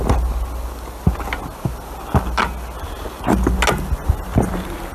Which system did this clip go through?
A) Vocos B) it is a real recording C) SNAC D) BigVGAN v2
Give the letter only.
B